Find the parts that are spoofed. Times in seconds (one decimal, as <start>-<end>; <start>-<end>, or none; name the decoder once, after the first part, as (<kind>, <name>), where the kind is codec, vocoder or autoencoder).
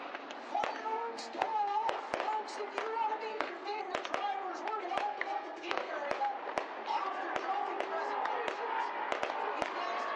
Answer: 0.8-2.0 (codec, SNAC); 3.3-3.8; 5.1-5.9